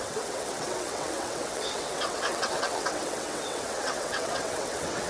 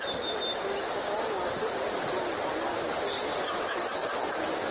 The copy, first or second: first